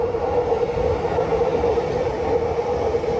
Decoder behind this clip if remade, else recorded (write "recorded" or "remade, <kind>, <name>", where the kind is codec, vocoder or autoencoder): recorded